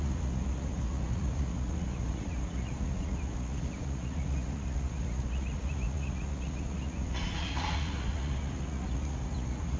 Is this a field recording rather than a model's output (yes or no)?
no